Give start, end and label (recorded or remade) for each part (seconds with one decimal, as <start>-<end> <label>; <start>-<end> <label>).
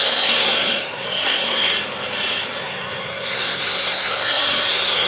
0.0-1.7 remade; 1.7-2.6 recorded; 2.6-5.1 remade